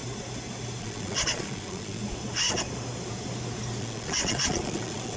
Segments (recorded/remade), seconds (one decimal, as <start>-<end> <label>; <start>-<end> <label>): 0.0-0.8 recorded; 0.8-2.0 remade; 2.0-3.8 recorded; 3.8-5.2 remade